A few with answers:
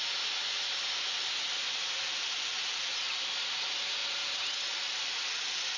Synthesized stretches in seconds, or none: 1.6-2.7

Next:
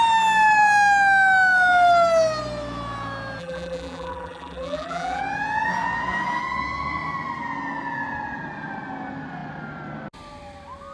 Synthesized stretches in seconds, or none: 3.4-5.2